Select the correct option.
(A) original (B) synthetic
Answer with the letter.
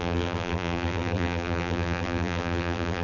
B